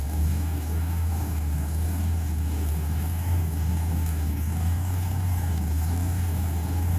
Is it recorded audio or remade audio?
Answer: remade